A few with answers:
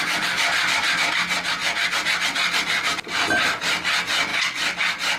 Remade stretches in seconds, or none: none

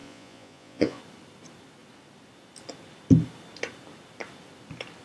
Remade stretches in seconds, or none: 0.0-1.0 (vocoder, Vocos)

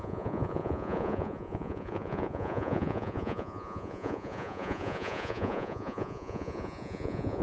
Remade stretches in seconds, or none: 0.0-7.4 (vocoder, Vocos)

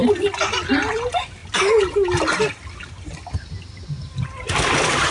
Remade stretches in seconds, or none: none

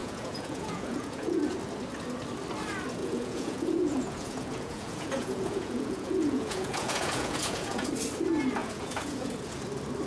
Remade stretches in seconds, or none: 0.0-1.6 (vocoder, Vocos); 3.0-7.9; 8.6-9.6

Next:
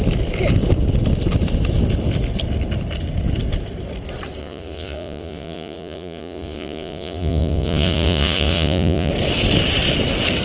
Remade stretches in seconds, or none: 4.4-9.1 (vocoder, Vocos)